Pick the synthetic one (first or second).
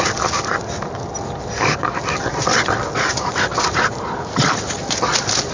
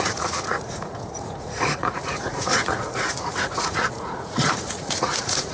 second